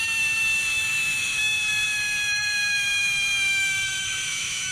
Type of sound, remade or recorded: remade